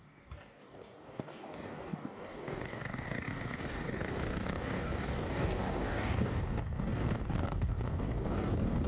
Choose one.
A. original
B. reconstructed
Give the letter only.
B